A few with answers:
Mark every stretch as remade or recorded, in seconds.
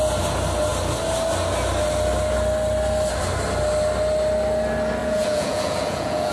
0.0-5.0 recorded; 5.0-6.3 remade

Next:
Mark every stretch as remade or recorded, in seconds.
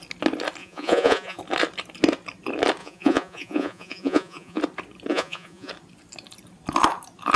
0.0-0.6 recorded; 0.6-1.4 remade; 1.4-2.8 recorded; 2.8-4.6 remade; 4.6-5.1 recorded; 5.1-5.7 remade; 5.7-7.4 recorded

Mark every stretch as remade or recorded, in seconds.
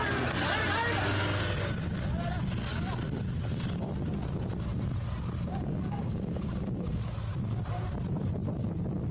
0.0-5.5 recorded; 5.5-7.1 remade; 7.1-9.1 recorded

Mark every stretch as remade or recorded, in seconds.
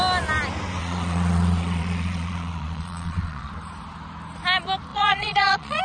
0.0-0.8 recorded; 0.8-3.5 remade; 3.5-4.9 recorded; 4.9-5.8 remade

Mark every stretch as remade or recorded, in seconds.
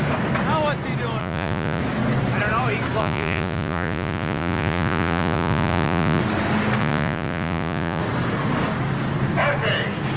0.0-1.2 recorded; 1.2-1.8 remade; 1.8-3.0 recorded; 3.0-6.2 remade; 6.2-6.8 recorded; 6.8-8.0 remade; 8.0-10.2 recorded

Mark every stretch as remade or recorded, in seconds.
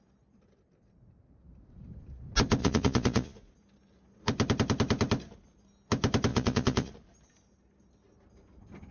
0.0-2.6 recorded; 2.6-3.5 remade; 3.5-6.3 recorded; 6.3-6.9 remade; 6.9-8.9 recorded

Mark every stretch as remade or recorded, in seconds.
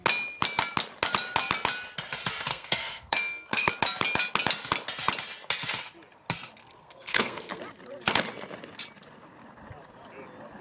0.0-2.5 recorded; 2.5-3.7 remade; 3.7-6.6 recorded; 6.6-7.6 remade; 7.6-10.6 recorded